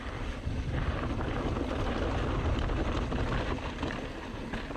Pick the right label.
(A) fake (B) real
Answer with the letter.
B